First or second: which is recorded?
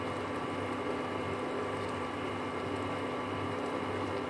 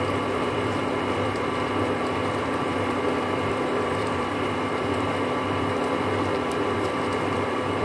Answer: first